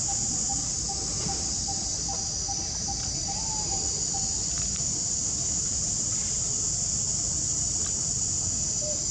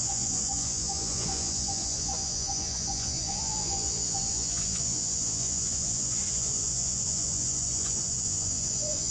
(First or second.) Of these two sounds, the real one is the first